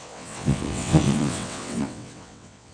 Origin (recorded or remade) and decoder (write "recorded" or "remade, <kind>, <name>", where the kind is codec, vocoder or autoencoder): remade, vocoder, WaveNeXt